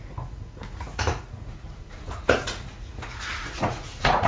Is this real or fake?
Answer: fake